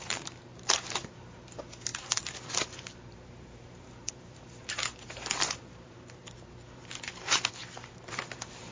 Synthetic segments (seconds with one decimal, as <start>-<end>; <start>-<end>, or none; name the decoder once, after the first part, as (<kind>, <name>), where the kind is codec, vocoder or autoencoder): 0.0-6.2 (vocoder, BigVGAN v2); 8.2-8.7